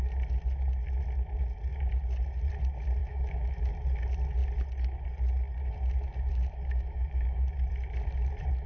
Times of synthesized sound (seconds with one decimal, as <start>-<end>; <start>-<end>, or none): 3.0-3.7; 6.3-7.7